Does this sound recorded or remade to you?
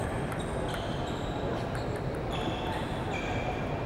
recorded